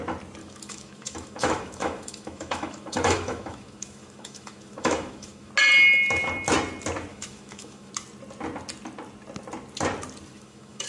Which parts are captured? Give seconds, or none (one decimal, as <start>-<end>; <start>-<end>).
0.0-0.4; 5.5-7.1; 7.9-10.3